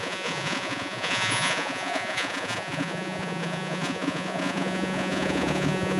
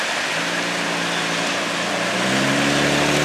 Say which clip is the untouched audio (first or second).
second